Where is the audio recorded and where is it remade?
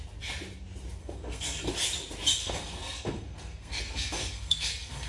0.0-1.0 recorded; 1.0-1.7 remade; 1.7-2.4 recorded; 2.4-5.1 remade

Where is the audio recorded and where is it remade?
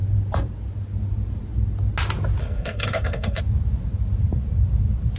0.0-2.4 recorded; 2.4-3.4 remade; 3.4-5.2 recorded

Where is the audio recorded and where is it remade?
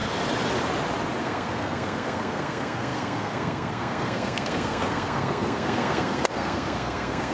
0.0-1.2 recorded; 1.2-7.3 remade